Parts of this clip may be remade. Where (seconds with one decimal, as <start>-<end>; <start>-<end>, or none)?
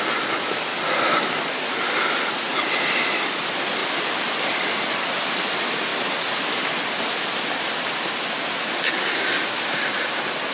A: 3.8-4.3